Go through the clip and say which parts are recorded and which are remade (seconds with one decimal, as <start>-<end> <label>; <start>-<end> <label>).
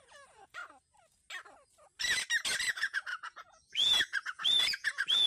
0.0-0.6 remade; 0.6-2.7 recorded; 2.7-5.3 remade